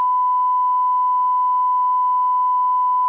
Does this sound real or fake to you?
real